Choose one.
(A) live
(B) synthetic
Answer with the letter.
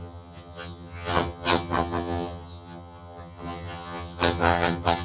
B